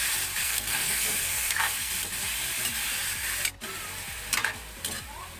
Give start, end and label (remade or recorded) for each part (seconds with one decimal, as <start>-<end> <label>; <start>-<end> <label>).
0.0-0.4 recorded; 0.4-1.9 remade; 1.9-5.4 recorded